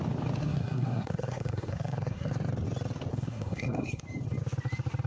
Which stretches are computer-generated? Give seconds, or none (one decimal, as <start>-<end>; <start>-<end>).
0.4-2.3; 3.1-4.0